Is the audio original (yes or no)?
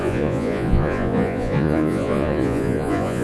no